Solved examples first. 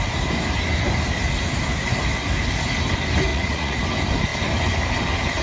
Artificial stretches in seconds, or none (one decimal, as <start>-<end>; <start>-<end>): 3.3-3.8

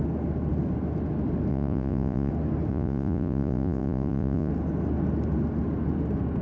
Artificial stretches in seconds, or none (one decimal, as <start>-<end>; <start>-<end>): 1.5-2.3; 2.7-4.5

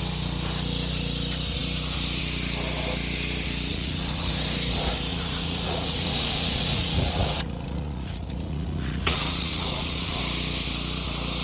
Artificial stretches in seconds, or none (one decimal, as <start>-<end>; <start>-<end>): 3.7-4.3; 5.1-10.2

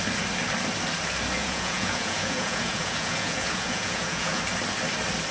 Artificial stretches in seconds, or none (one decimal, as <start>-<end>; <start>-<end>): 1.4-4.4

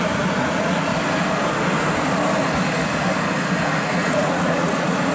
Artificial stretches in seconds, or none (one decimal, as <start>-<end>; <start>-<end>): 0.0-0.9; 3.8-5.1

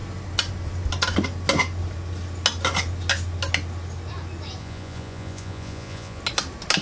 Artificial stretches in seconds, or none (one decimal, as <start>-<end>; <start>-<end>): 4.6-6.2